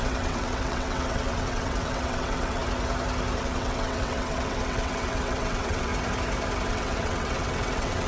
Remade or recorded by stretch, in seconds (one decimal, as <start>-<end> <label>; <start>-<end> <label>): 0.0-2.6 remade; 2.6-3.4 recorded; 3.4-5.9 remade; 5.9-6.7 recorded; 6.7-8.1 remade